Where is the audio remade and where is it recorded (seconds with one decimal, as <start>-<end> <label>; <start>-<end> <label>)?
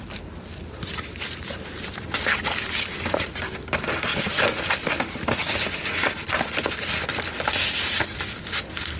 0.0-0.5 recorded; 0.5-3.2 remade; 3.2-9.0 recorded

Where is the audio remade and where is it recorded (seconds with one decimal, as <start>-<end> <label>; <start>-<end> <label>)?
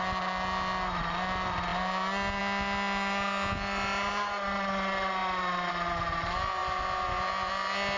0.0-8.0 recorded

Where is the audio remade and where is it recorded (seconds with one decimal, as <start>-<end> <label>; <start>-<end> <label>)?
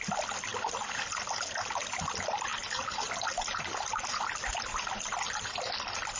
0.0-0.5 remade; 0.5-1.9 recorded; 1.9-2.5 remade; 2.5-6.2 recorded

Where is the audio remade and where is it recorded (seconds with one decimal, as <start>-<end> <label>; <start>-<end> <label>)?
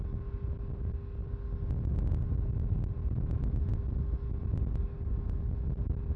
0.0-6.2 recorded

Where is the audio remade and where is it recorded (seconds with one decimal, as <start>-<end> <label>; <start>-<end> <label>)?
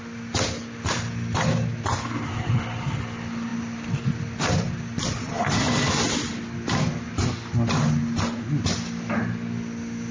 0.0-10.1 recorded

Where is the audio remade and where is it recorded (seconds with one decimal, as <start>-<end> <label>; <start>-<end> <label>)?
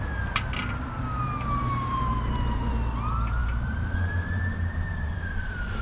0.0-1.6 recorded; 1.6-2.7 remade; 2.7-3.4 recorded; 3.4-5.8 remade